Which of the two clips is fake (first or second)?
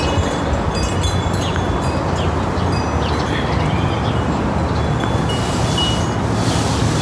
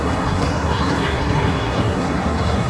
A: second